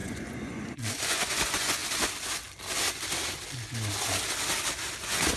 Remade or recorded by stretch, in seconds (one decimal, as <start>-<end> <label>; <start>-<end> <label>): 0.0-1.8 remade; 1.8-5.0 recorded; 5.0-5.4 remade